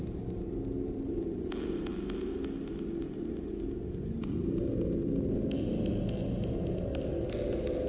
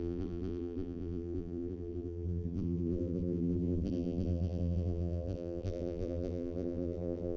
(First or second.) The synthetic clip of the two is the second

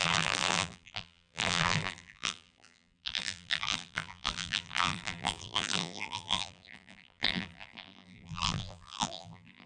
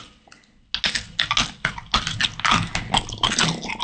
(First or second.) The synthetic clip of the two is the first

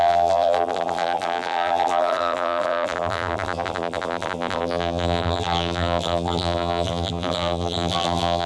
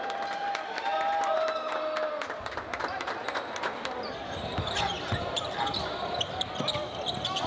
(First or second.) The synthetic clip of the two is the first